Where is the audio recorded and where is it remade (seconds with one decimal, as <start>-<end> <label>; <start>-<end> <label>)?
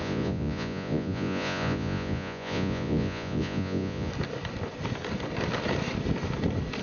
0.0-4.1 remade; 4.1-6.8 recorded